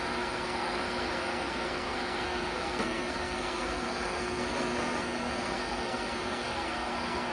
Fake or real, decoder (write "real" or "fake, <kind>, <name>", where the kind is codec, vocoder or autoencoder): fake, codec, SNAC